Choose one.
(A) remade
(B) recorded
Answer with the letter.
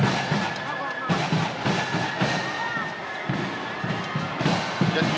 B